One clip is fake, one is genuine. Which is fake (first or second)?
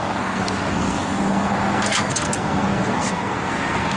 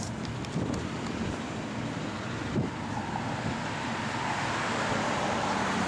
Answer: first